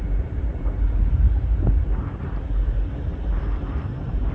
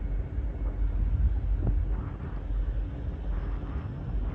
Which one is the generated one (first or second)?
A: first